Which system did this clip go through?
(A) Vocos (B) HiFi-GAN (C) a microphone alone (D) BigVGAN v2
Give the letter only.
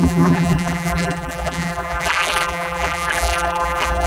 D